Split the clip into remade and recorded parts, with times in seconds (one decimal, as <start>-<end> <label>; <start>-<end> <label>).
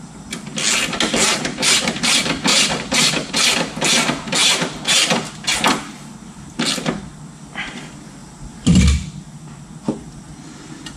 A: 0.0-1.3 recorded; 1.3-2.0 remade; 2.0-2.5 recorded; 2.5-3.3 remade; 3.3-4.4 recorded; 4.4-6.6 remade; 6.6-8.2 recorded; 8.2-8.8 remade; 8.8-11.0 recorded